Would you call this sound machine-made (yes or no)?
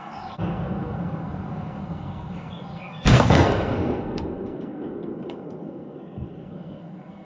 yes